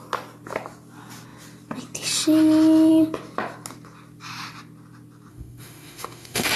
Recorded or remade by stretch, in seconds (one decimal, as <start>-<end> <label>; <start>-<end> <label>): 0.0-5.3 recorded; 5.3-6.6 remade